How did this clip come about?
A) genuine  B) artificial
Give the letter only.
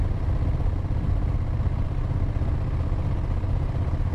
A